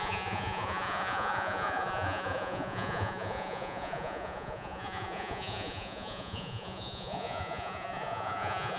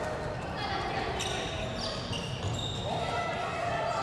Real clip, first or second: second